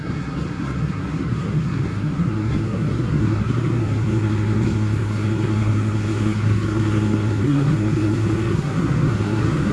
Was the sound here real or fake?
fake